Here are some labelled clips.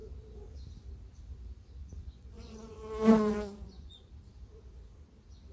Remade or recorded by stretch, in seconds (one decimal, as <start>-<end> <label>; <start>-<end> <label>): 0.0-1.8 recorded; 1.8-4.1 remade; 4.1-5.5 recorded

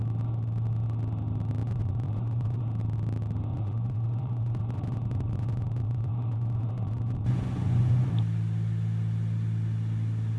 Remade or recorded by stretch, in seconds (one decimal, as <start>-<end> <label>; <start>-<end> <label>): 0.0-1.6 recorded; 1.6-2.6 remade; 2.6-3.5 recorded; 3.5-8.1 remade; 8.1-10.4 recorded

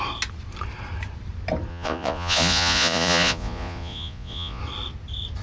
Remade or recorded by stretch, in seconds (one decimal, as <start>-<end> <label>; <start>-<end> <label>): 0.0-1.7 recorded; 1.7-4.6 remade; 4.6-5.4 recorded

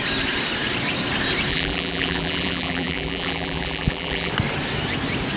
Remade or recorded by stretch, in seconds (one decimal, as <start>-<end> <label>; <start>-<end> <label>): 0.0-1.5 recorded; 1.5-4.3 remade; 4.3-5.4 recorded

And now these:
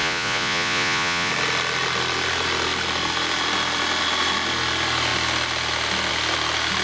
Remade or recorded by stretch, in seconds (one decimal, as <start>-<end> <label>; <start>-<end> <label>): 0.0-1.3 remade; 1.3-6.8 recorded

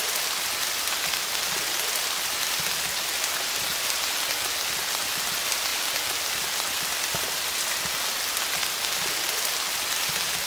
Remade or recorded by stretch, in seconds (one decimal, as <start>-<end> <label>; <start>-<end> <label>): 0.0-10.5 recorded

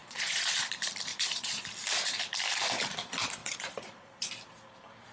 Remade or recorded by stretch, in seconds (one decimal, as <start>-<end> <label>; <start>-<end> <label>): 0.0-0.7 remade; 0.7-1.1 recorded; 1.1-1.6 remade; 1.6-3.4 recorded; 3.4-4.3 remade; 4.3-5.1 recorded

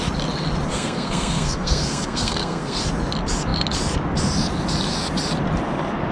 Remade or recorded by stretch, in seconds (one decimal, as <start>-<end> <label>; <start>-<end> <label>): 0.0-0.7 recorded; 0.7-2.8 remade; 2.8-6.1 recorded